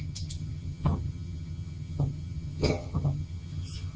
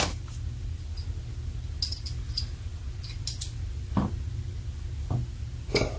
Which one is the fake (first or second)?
first